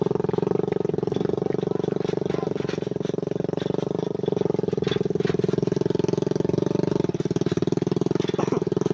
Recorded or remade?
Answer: recorded